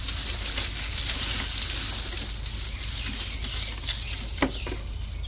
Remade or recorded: recorded